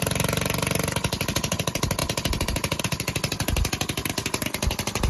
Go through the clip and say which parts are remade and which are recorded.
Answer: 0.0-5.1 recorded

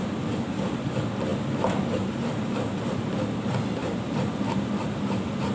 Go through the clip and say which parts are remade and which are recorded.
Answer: 0.0-3.8 recorded; 3.8-4.9 remade; 4.9-5.5 recorded

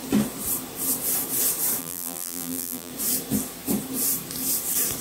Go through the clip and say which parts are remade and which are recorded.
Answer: 0.0-1.8 recorded; 1.8-2.9 remade; 2.9-5.0 recorded

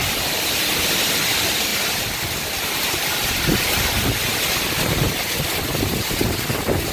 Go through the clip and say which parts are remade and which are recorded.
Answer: 0.0-1.7 recorded; 1.7-2.9 remade; 2.9-6.9 recorded

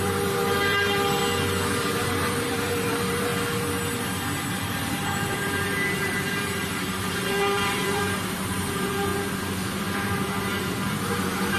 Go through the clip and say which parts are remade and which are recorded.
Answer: 0.0-1.2 remade; 1.2-1.8 recorded; 1.8-3.3 remade; 3.3-4.6 recorded; 4.6-9.1 remade; 9.1-9.8 recorded; 9.8-11.6 remade

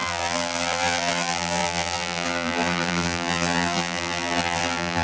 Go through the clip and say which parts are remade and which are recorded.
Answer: 0.0-5.0 remade

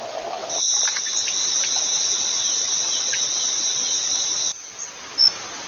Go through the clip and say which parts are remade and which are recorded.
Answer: 0.0-0.6 recorded; 0.6-3.5 remade; 3.5-5.7 recorded